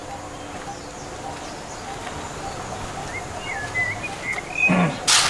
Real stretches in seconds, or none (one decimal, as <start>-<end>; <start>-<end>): 0.0-5.3